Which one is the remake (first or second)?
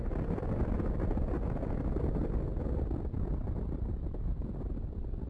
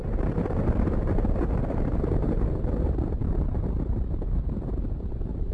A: second